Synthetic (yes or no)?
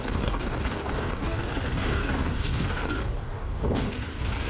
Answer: yes